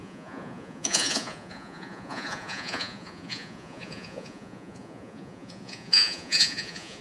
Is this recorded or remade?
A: remade